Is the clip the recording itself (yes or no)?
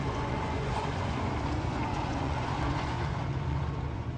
no